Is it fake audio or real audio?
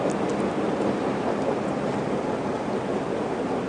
real